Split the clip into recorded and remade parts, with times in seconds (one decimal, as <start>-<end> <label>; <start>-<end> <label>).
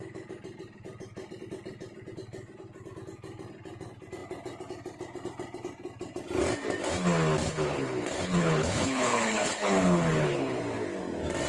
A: 0.0-7.4 recorded; 7.4-10.6 remade; 10.6-11.5 recorded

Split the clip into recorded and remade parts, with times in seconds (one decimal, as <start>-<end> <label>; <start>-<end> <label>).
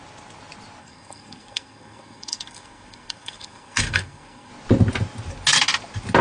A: 0.0-0.8 recorded; 0.8-4.5 remade; 4.5-6.2 recorded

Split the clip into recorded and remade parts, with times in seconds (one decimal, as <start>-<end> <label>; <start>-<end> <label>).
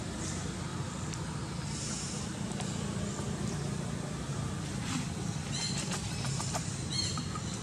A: 0.0-7.6 recorded